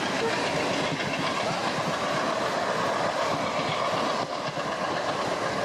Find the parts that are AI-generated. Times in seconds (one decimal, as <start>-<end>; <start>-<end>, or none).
1.6-2.5